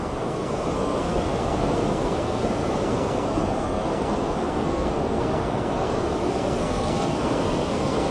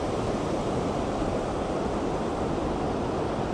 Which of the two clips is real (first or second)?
second